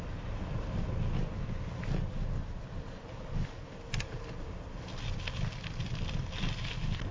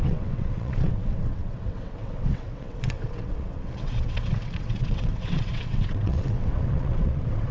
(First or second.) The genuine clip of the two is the first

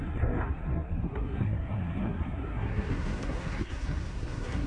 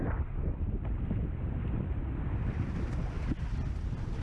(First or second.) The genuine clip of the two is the second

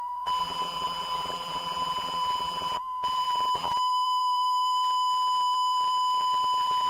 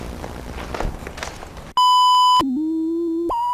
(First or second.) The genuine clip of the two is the second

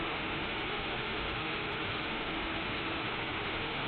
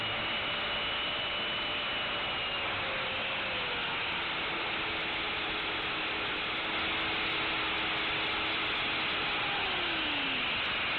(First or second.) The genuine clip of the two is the second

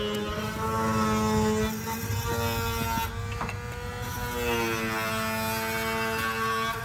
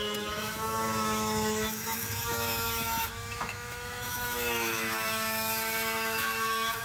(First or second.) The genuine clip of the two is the first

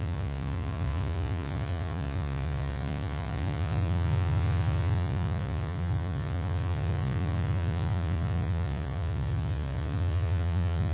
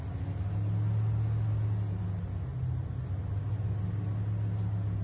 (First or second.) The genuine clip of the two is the second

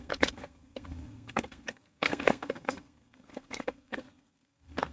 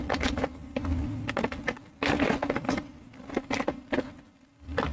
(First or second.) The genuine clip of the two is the second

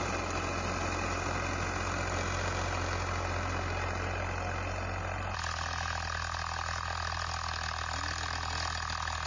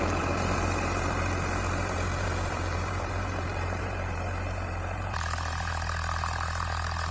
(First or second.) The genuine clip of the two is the first